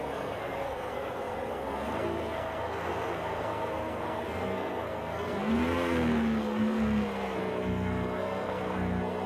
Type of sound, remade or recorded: remade